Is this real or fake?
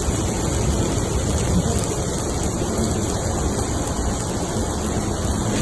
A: real